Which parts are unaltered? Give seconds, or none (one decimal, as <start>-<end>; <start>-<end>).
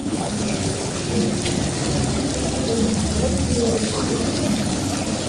1.3-3.5; 4.2-5.3